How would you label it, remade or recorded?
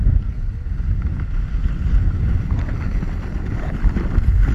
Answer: recorded